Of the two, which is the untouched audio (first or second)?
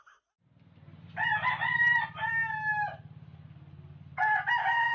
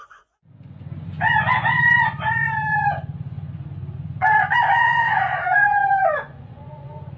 first